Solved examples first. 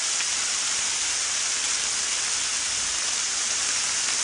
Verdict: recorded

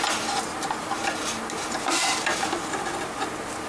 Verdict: recorded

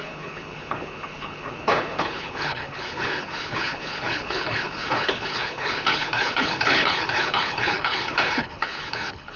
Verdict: remade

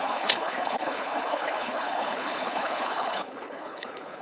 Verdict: remade